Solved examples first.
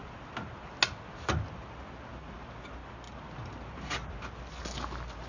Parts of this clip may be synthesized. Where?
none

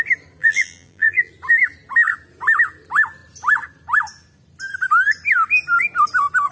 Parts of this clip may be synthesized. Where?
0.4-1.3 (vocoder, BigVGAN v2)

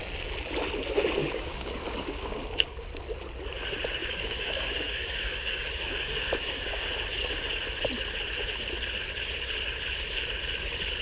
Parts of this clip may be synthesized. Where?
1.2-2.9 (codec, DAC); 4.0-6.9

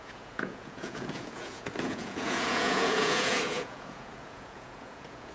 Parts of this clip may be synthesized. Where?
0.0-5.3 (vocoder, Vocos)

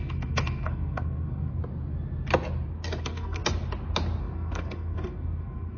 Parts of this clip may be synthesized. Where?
0.0-1.6 (codec, SNAC); 3.0-3.4; 4.2-5.8